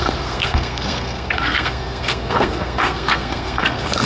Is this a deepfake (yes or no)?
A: yes